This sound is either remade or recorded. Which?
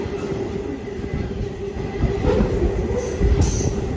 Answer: recorded